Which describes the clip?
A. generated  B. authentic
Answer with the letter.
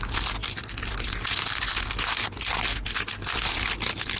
B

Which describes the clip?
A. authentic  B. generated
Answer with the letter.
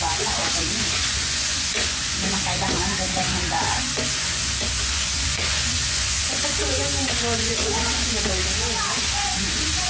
B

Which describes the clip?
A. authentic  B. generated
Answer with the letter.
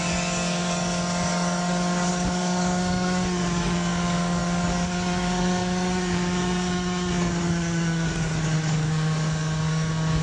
B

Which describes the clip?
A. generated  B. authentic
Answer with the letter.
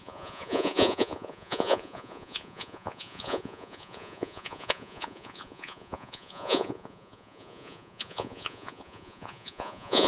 A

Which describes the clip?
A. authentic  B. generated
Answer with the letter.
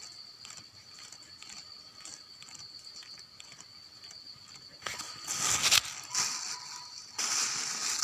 A